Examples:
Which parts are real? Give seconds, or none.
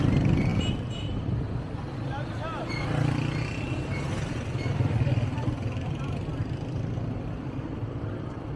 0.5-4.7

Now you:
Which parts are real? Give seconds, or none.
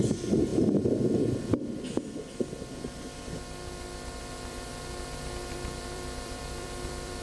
0.5-4.2; 4.7-5.5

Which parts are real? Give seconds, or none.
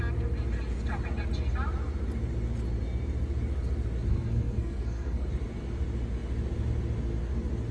0.0-4.1; 5.3-7.7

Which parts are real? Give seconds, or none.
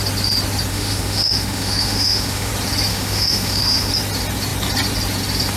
0.0-0.7; 2.5-2.9; 3.9-5.6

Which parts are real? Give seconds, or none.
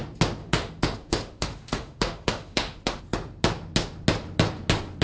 0.0-0.4; 3.0-5.0